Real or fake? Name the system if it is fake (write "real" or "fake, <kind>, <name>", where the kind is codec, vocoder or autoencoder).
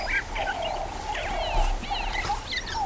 real